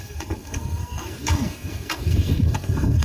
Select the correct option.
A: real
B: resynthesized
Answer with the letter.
B